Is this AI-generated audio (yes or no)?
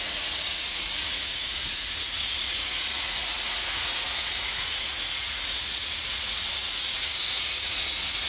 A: yes